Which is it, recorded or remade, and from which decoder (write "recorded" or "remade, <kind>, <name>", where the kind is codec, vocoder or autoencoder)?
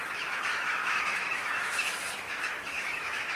remade, autoencoder, DAC-VAE